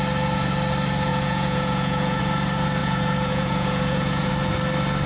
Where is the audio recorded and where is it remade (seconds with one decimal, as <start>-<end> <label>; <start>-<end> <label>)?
0.0-1.1 recorded; 1.1-2.2 remade; 2.2-2.8 recorded; 2.8-4.3 remade; 4.3-5.1 recorded